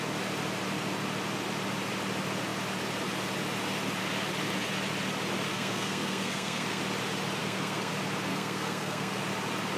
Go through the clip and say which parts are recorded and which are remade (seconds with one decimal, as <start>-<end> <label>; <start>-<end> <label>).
0.0-5.5 recorded; 5.5-6.8 remade; 6.8-7.4 recorded; 7.4-7.9 remade; 7.9-8.3 recorded; 8.3-9.2 remade; 9.2-9.8 recorded